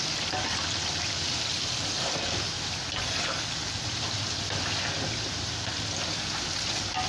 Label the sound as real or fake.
real